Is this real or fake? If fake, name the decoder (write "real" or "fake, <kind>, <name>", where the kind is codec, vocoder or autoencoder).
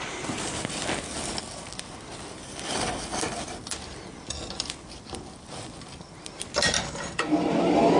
real